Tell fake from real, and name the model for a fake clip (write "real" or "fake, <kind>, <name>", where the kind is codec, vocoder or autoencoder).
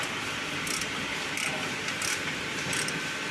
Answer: real